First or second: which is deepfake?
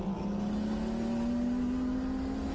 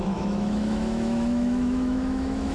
second